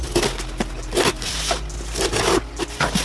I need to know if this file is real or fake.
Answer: real